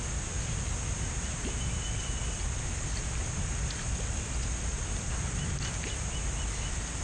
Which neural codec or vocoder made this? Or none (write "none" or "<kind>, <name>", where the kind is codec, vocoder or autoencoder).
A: none